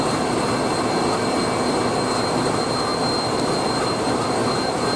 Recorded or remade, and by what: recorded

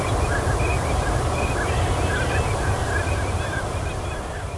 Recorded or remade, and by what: recorded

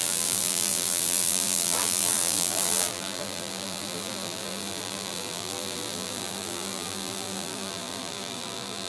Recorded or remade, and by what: remade, vocoder, BigVGAN v2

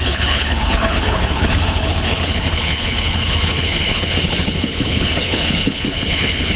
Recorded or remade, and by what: remade, codec, HILCodec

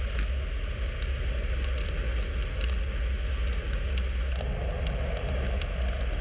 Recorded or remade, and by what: recorded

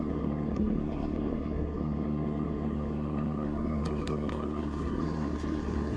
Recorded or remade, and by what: remade, codec, SNAC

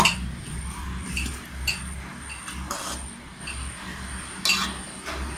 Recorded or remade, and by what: recorded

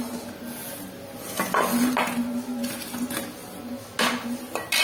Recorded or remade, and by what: recorded